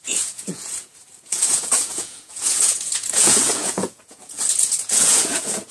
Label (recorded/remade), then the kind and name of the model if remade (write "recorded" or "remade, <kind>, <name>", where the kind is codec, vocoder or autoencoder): remade, vocoder, Vocos